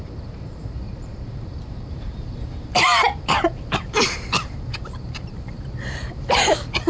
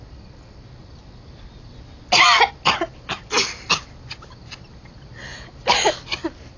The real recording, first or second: second